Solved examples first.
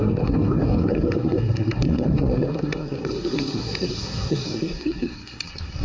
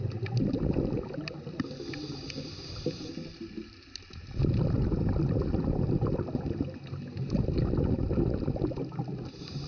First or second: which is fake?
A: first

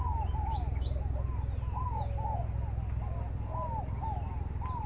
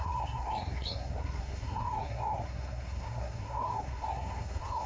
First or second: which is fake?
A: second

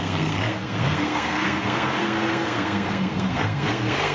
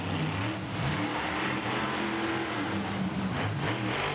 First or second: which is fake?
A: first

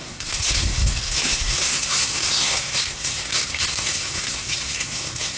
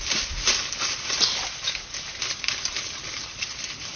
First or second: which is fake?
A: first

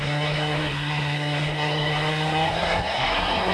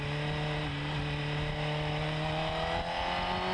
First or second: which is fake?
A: first